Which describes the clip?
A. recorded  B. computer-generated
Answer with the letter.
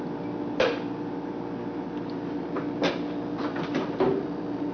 A